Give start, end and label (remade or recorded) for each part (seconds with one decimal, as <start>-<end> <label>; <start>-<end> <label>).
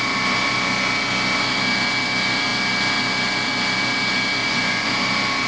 0.0-4.4 recorded; 4.4-4.9 remade; 4.9-5.5 recorded